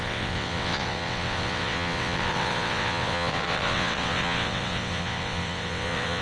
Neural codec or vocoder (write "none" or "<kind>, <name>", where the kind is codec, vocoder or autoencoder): vocoder, WaveNeXt